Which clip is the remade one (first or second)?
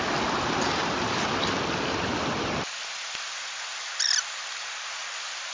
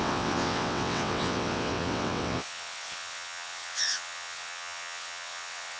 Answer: second